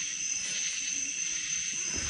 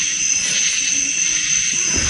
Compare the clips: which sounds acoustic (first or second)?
second